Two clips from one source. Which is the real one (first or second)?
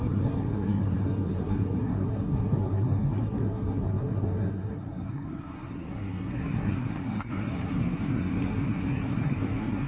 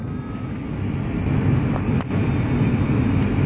second